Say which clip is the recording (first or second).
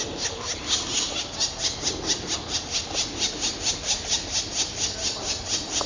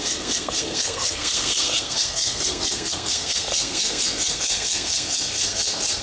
first